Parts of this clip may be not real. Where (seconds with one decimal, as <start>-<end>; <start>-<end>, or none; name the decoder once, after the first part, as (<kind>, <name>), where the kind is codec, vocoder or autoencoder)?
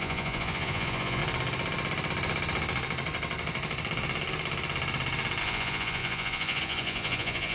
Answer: 0.0-1.2 (vocoder, Vocos); 5.4-7.5